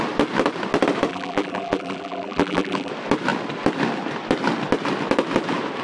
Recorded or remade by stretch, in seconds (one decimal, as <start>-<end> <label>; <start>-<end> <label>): 0.0-1.1 recorded; 1.1-2.9 remade; 2.9-5.8 recorded